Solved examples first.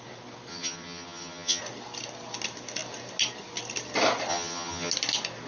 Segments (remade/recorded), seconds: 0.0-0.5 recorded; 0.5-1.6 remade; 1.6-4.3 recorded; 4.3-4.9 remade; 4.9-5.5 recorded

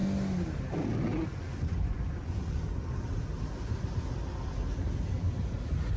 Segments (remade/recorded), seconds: 0.0-1.3 recorded; 1.3-2.8 remade; 2.8-6.0 recorded